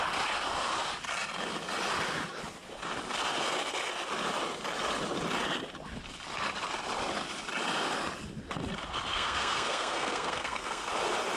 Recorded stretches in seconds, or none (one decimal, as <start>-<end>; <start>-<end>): 0.0-9.1; 10.9-11.4